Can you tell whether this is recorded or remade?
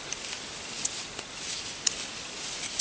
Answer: recorded